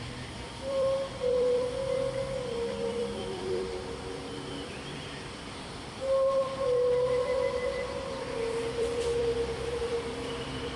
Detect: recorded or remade remade